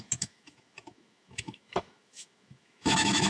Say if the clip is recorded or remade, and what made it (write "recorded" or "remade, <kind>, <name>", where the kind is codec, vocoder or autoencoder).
remade, autoencoder, DAC-VAE